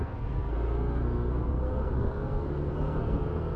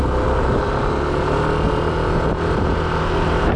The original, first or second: second